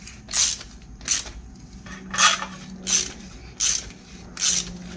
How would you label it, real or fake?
real